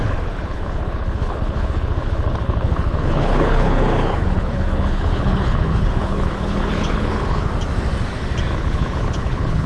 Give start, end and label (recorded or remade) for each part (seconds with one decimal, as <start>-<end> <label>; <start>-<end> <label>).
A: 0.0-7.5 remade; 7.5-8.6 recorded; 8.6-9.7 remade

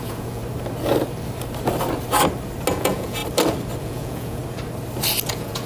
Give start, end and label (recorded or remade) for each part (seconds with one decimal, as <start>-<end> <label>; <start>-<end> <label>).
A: 0.0-0.4 remade; 0.4-2.7 recorded; 2.7-3.2 remade; 3.2-3.8 recorded; 3.8-4.4 remade; 4.4-5.3 recorded; 5.3-5.7 remade

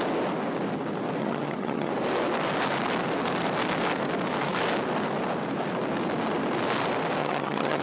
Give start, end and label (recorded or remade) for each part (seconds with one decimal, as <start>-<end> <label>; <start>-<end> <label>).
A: 0.0-1.2 recorded; 1.2-1.9 remade; 1.9-7.2 recorded; 7.2-7.8 remade

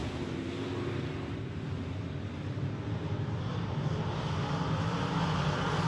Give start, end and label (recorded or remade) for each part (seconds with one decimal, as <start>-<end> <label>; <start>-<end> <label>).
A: 0.0-3.5 recorded; 3.5-5.9 remade

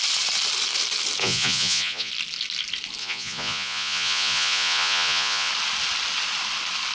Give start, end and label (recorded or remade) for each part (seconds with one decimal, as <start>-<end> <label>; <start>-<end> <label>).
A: 0.0-1.2 recorded; 1.2-2.1 remade; 2.1-3.0 recorded; 3.0-5.5 remade; 5.5-6.9 recorded

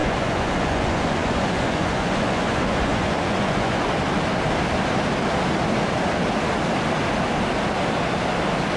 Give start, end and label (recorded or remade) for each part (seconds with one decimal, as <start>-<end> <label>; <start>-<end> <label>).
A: 0.0-3.9 remade; 3.9-8.8 recorded